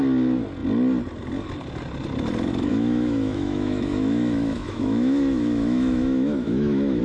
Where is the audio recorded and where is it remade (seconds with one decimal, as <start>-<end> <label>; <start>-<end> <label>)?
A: 0.0-2.7 recorded; 2.7-7.0 remade